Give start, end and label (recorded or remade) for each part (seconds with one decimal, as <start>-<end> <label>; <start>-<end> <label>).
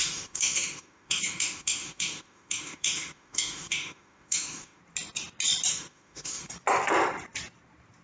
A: 0.0-4.8 remade; 4.8-5.7 recorded; 5.7-6.5 remade; 6.5-8.0 recorded